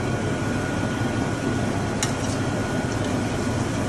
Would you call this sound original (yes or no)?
yes